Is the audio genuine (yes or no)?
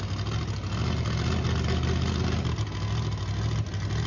yes